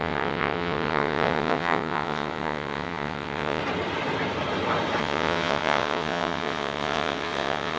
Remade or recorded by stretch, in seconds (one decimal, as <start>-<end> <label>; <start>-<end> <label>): 0.0-3.6 remade; 3.6-5.0 recorded; 5.0-7.8 remade